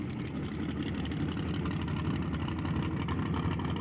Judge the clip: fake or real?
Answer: real